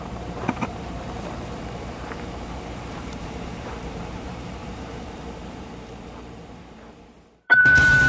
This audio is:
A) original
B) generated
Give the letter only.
B